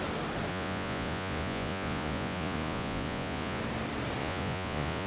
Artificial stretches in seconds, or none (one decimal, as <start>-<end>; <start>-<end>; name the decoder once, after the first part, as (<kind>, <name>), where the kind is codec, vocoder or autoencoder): 0.5-3.6 (vocoder, Vocos); 4.2-5.1